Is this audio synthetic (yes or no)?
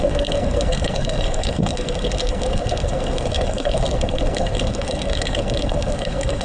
yes